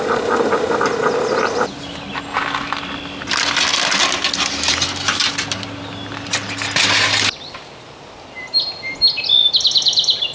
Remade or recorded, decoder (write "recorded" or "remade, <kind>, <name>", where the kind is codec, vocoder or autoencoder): recorded